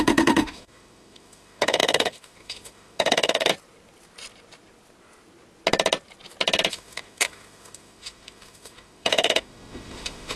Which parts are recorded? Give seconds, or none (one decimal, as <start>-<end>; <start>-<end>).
3.5-6.7